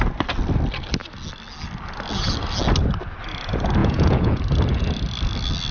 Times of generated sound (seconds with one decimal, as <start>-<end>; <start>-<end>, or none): 3.8-4.4